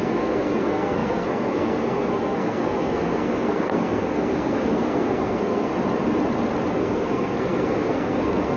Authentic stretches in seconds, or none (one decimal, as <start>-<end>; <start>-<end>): 5.7-6.7